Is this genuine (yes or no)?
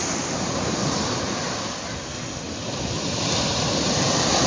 yes